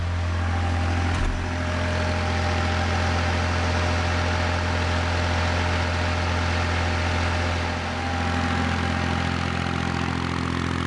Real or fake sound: real